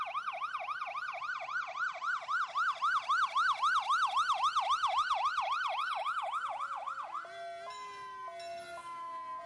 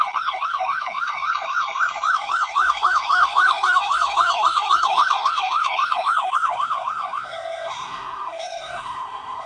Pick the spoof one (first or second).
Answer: second